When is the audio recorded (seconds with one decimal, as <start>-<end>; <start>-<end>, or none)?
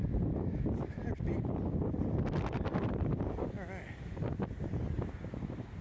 0.0-1.0